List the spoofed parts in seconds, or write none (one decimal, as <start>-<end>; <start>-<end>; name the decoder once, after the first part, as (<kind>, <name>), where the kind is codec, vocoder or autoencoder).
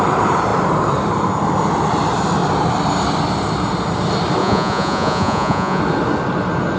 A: 4.4-5.8 (vocoder, Vocos)